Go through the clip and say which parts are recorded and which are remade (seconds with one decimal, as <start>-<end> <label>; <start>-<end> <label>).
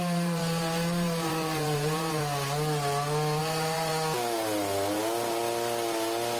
0.0-2.2 remade; 2.2-3.4 recorded; 3.4-3.9 remade; 3.9-6.4 recorded